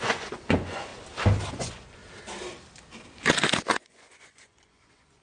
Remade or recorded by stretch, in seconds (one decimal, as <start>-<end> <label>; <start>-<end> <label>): 0.0-0.9 remade; 0.9-1.5 recorded; 1.5-2.0 remade; 2.0-3.7 recorded; 3.7-5.2 remade

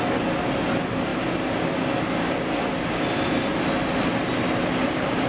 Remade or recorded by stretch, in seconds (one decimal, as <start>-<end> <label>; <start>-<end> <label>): 0.0-5.3 recorded

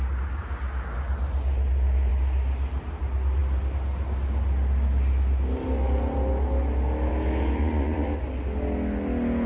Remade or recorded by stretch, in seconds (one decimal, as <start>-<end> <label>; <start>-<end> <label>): 0.0-7.6 recorded; 7.6-8.2 remade; 8.2-9.5 recorded